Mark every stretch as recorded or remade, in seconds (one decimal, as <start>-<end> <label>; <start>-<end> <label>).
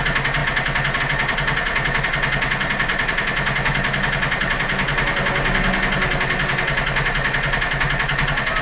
0.0-8.6 recorded